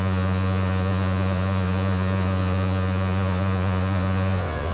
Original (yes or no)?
no